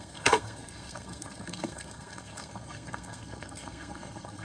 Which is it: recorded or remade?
remade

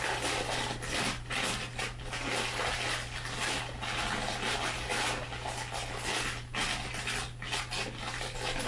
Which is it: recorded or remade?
recorded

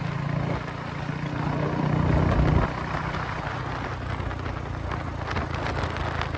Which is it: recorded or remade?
recorded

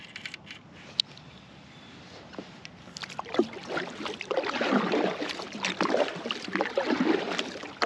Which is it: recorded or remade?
recorded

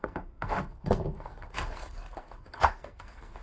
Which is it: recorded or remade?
remade